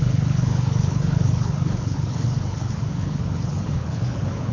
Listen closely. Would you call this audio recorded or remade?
remade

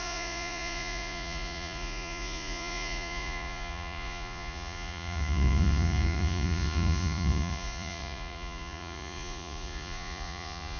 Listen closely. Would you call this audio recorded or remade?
remade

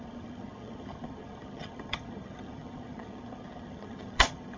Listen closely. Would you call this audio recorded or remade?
remade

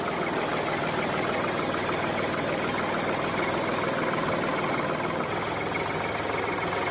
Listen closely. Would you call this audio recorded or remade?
recorded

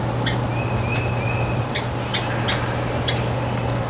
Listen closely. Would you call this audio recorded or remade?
recorded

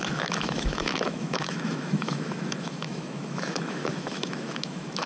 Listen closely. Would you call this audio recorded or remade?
remade